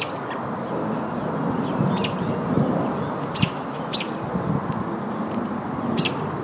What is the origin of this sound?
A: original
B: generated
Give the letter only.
A